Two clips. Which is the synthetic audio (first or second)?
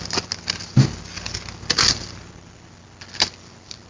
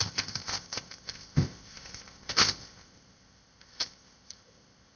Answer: second